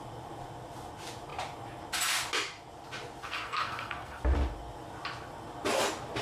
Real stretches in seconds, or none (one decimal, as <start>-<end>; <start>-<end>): 0.0-3.2; 4.2-6.2